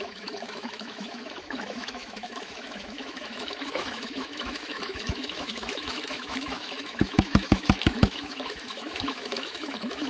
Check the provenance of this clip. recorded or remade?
remade